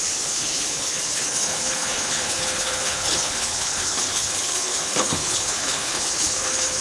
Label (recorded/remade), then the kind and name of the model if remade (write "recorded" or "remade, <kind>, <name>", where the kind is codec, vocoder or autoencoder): remade, codec, HILCodec